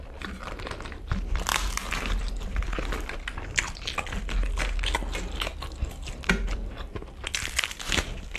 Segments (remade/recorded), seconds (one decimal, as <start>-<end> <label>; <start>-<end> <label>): 0.0-1.5 remade; 1.5-6.3 recorded; 6.3-7.0 remade; 7.0-7.7 recorded; 7.7-8.4 remade